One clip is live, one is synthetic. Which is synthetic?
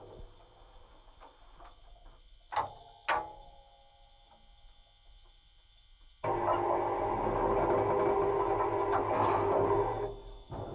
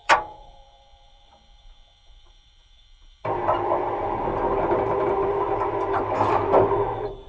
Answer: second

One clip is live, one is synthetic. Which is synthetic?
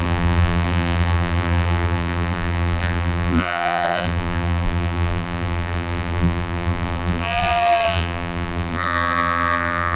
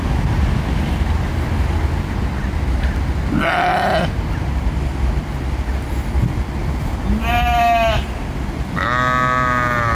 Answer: first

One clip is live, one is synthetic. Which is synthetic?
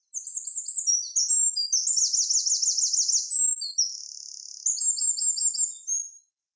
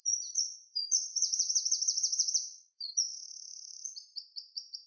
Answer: second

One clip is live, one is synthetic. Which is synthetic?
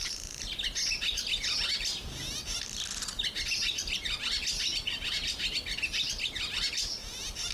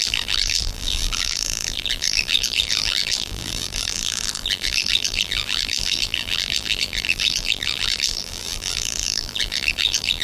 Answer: second